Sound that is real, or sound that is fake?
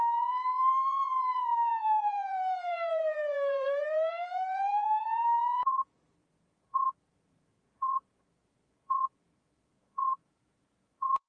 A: fake